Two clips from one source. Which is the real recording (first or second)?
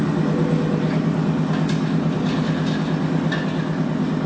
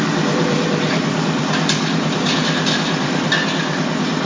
first